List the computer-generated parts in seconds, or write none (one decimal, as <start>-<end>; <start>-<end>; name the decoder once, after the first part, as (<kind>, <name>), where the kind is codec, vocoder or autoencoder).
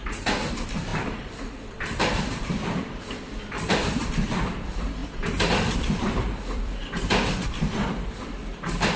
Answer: 0.5-5.0 (vocoder, BigVGAN v2); 5.9-6.8; 8.1-9.0